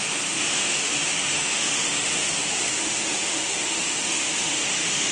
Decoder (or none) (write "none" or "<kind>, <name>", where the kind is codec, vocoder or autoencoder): autoencoder, DAC-VAE